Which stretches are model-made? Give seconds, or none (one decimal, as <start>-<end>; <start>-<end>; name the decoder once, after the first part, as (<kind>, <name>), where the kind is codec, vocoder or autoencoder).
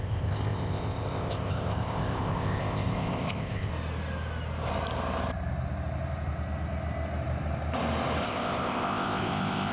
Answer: 0.0-3.7 (codec, ZipCodec); 8.2-9.7